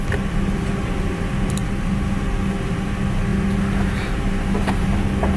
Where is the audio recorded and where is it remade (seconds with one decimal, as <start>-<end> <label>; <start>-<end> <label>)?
0.0-5.4 recorded